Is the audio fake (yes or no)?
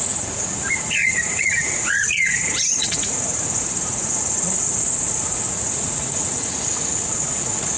yes